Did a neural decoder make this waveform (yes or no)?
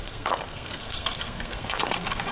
yes